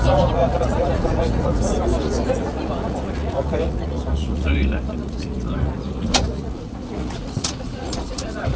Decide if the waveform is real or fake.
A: fake